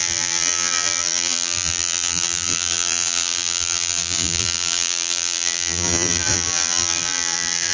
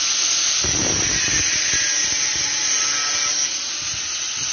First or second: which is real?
second